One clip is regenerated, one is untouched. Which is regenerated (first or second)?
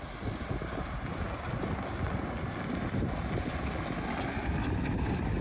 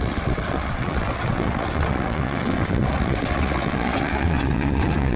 second